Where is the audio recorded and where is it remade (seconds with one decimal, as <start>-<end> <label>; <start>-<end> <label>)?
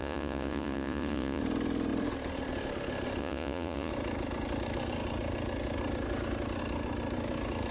0.0-1.4 remade; 1.4-3.2 recorded; 3.2-3.9 remade; 3.9-7.7 recorded